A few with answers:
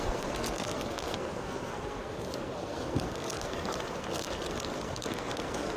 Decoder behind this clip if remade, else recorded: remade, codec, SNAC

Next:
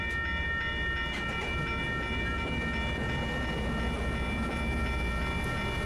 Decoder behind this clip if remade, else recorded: recorded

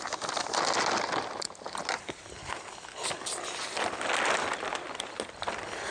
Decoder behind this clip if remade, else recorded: recorded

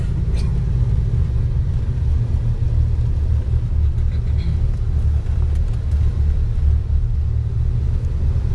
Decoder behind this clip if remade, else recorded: recorded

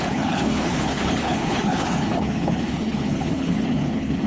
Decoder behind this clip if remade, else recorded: remade, codec, HILCodec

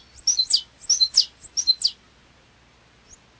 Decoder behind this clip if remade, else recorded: recorded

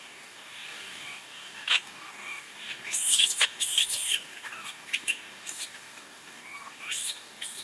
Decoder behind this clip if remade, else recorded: remade, codec, DAC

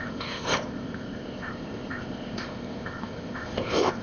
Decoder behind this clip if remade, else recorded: remade, codec, ZipCodec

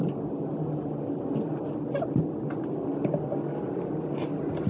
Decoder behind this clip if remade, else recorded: recorded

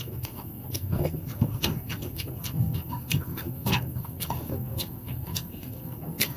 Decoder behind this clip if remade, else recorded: remade, codec, SNAC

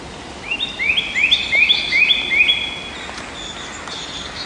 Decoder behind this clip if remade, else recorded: recorded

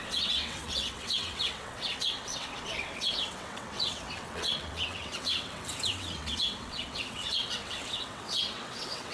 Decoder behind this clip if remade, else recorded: remade, vocoder, WaveNeXt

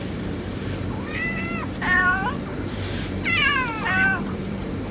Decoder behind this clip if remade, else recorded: remade, vocoder, BigVGAN v2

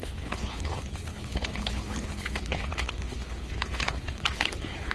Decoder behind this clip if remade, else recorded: remade, codec, HILCodec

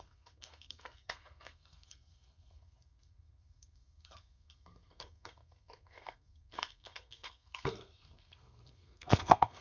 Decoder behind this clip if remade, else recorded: remade, codec, SNAC